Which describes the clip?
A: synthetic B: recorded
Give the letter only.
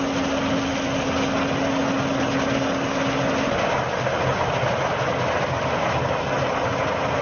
B